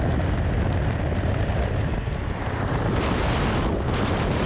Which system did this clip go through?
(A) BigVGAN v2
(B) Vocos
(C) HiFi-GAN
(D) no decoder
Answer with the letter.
D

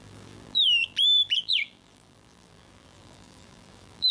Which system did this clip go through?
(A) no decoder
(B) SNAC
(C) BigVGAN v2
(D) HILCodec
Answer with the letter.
C